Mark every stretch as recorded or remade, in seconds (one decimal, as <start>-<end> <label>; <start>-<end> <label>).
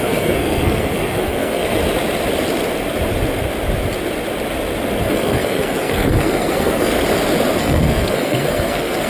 0.0-1.8 remade; 1.8-5.0 recorded; 5.0-6.9 remade; 6.9-7.6 recorded; 7.6-9.1 remade